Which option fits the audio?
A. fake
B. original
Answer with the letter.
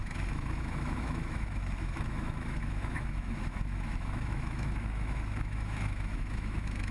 A